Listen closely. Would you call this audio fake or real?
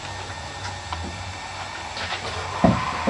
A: real